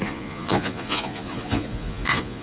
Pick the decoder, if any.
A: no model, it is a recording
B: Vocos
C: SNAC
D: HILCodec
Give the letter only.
B